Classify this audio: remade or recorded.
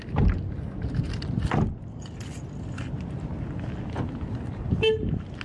recorded